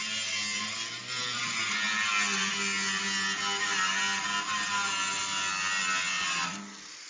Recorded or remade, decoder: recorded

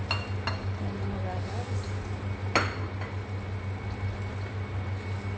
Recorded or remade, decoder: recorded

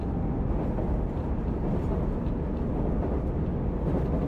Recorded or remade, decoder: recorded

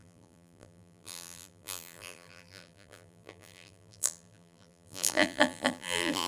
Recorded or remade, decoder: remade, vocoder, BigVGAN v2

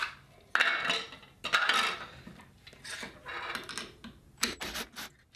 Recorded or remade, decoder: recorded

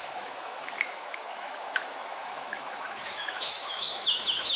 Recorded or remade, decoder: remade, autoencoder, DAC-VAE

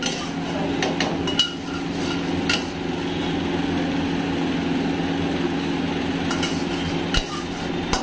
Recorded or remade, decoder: recorded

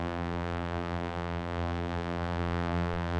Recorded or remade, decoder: remade, vocoder, BigVGAN v2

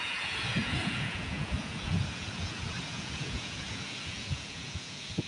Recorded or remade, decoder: remade, vocoder, Vocos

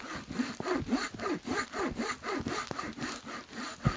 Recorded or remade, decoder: recorded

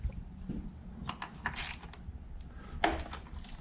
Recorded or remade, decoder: recorded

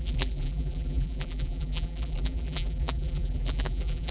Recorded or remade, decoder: remade, vocoder, BigVGAN v2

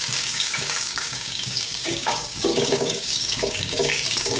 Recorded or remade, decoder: remade, codec, DAC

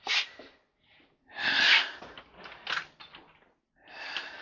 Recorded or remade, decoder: recorded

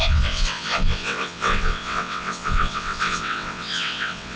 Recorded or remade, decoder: remade, vocoder, WaveNeXt